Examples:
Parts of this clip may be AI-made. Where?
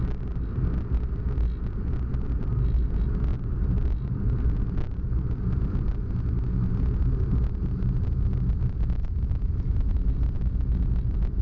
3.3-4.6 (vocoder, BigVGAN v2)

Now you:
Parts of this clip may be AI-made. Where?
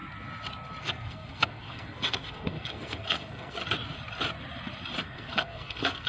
0.8-3.6 (codec, SNAC); 5.0-6.1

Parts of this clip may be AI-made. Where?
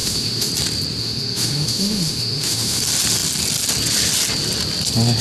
0.0-0.5 (autoencoder, DAC-VAE); 1.0-2.8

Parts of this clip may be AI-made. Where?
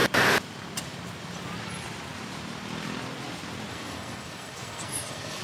3.7-5.4 (codec, SNAC)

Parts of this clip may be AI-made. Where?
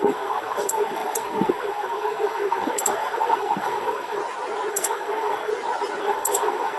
0.0-4.2 (codec, SNAC); 4.7-5.5; 6.0-6.8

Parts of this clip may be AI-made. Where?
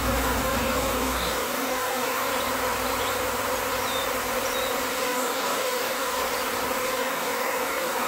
0.0-2.3 (codec, DAC); 4.9-6.2; 6.8-8.1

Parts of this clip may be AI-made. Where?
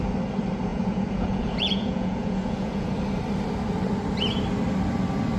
0.7-2.9 (vocoder, Vocos)